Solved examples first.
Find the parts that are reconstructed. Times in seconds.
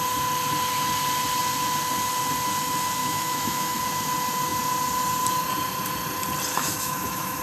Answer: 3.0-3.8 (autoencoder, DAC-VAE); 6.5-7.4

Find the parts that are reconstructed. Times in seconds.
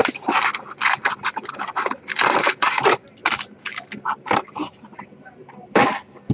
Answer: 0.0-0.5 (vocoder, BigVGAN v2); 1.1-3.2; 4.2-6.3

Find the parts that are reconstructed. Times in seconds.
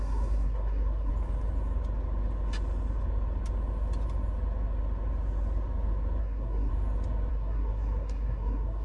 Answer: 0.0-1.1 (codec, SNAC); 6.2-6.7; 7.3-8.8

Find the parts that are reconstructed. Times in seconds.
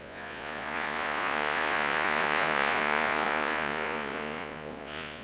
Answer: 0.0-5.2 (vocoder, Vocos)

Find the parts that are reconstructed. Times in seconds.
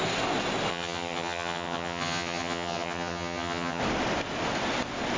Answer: 0.7-3.8 (vocoder, HiFi-GAN)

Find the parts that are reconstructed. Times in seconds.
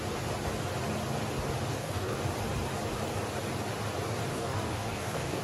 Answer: 1.7-2.2 (codec, DAC); 4.3-5.4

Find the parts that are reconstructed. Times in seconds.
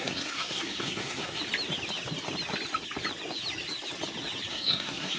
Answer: 0.0-1.4 (codec, SNAC); 4.5-5.2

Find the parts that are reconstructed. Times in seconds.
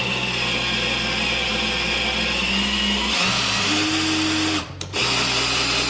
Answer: none